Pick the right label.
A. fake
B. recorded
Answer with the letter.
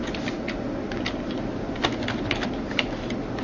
B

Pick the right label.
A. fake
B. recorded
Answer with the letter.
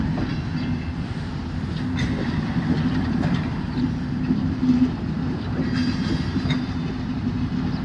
B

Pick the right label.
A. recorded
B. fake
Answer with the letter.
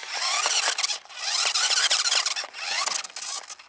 A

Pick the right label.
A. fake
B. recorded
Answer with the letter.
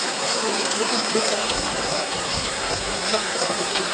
A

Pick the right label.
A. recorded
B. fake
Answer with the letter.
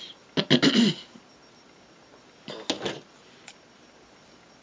A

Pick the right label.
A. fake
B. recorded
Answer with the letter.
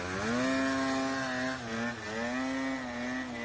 B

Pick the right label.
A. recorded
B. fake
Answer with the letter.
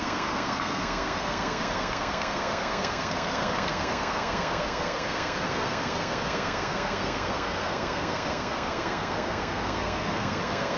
B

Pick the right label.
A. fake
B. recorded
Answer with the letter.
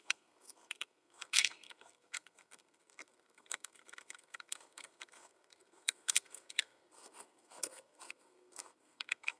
A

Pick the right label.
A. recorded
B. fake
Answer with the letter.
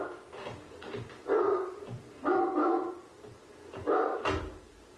A